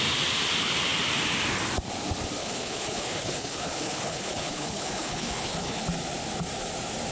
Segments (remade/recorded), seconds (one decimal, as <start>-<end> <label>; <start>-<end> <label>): 0.0-2.4 recorded; 2.4-5.8 remade; 5.8-7.1 recorded